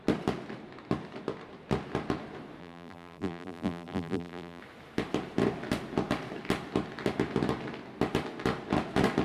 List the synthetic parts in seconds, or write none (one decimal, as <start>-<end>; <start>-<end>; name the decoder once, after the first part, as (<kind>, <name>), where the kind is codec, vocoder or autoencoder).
2.6-4.6 (vocoder, BigVGAN v2)